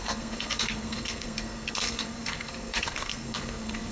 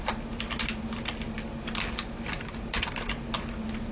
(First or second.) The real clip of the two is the second